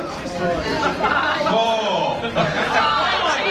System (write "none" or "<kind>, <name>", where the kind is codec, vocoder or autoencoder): none